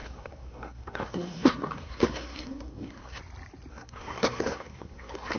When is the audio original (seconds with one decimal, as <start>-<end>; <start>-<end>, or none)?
3.2-3.7